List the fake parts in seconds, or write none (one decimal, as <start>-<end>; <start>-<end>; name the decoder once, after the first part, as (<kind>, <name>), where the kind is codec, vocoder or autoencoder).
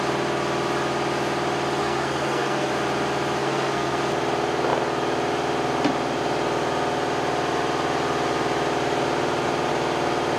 1.8-2.7 (codec, SNAC); 3.4-4.0